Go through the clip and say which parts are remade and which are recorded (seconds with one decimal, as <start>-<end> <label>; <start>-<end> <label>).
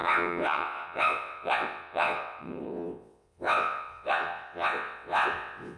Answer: 0.0-5.8 remade